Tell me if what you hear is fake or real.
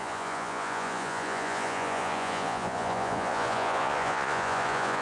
fake